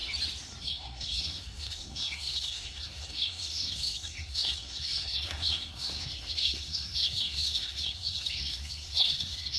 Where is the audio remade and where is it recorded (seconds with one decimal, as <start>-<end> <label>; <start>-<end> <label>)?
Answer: 0.0-0.6 recorded; 0.6-9.6 remade

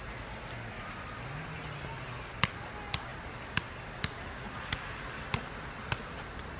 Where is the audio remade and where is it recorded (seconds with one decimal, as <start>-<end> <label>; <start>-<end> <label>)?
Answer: 0.0-6.6 recorded

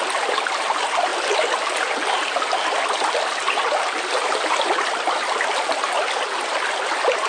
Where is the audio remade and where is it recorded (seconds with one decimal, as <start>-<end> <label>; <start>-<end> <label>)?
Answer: 0.0-7.3 recorded

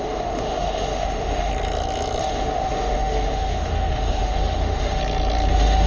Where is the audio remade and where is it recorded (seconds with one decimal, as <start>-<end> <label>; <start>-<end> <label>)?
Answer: 0.0-1.5 remade; 1.5-2.2 recorded; 2.2-5.0 remade; 5.0-5.5 recorded; 5.5-5.9 remade

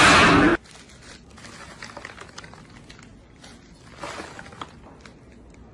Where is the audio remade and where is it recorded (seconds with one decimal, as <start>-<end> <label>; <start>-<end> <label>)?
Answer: 0.0-5.7 recorded

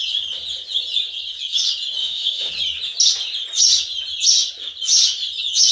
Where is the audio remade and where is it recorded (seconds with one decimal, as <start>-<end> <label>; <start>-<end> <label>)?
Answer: 0.0-2.0 recorded; 2.0-2.5 remade; 2.5-5.7 recorded

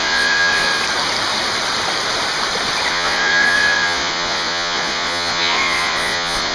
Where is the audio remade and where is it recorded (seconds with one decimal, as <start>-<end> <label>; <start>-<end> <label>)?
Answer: 0.0-0.7 remade; 0.7-2.9 recorded; 2.9-6.5 remade